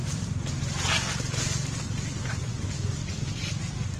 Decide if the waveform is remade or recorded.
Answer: recorded